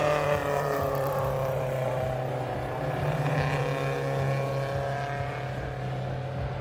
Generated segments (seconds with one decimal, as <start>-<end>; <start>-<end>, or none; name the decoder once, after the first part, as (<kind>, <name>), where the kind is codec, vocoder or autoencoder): 0.4-3.6 (vocoder, BigVGAN v2)